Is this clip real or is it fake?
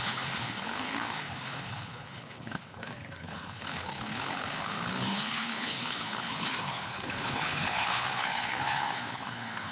fake